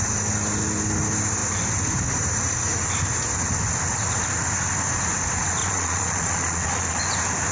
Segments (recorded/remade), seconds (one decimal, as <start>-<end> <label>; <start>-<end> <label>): 0.0-5.6 recorded; 5.6-7.0 remade; 7.0-7.5 recorded